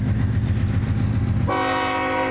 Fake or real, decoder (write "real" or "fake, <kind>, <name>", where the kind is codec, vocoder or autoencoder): real